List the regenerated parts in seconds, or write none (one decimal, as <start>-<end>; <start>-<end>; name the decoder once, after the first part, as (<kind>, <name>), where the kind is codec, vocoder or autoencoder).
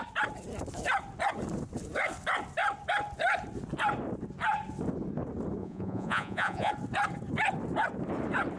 5.6-6.7 (vocoder, Vocos)